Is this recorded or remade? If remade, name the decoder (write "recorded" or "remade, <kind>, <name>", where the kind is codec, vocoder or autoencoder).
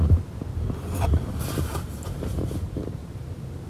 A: recorded